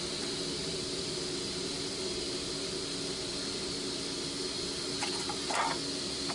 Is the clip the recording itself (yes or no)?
yes